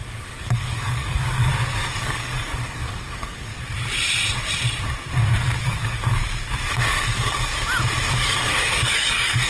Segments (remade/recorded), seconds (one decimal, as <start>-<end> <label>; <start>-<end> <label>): 0.0-1.5 remade; 1.5-2.0 recorded; 2.0-3.5 remade; 3.5-5.6 recorded; 5.6-6.2 remade; 6.2-6.7 recorded; 6.7-7.5 remade; 7.5-8.1 recorded; 8.1-9.5 remade